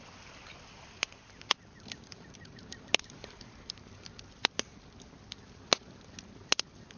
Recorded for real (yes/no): yes